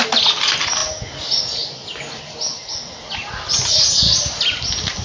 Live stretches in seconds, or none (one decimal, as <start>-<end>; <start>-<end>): 0.0-5.0